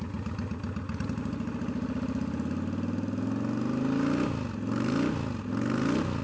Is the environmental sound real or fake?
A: real